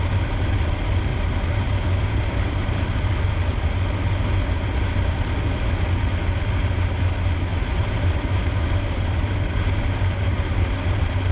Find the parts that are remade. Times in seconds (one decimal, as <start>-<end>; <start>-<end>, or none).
1.1-2.8; 7.5-11.3